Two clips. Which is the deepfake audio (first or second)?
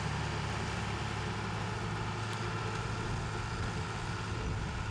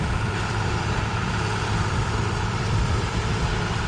second